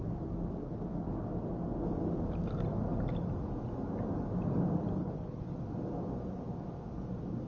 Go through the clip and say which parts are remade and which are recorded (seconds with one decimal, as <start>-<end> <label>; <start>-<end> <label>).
0.0-5.0 recorded; 5.0-5.5 remade; 5.5-7.5 recorded